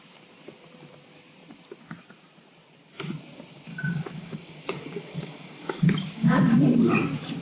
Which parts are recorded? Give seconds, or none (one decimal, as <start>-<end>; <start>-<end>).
0.0-3.7; 6.6-7.4